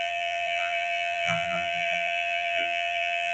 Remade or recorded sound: remade